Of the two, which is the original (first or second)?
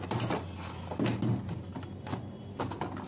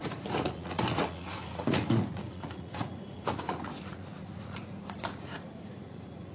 first